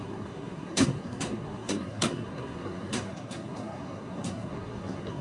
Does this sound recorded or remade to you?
remade